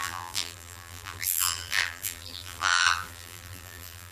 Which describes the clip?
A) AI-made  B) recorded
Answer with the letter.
A